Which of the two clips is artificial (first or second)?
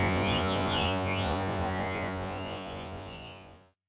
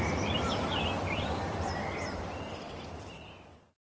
first